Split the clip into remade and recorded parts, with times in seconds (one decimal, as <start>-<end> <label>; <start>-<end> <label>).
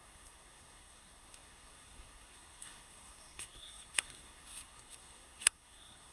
0.0-6.1 remade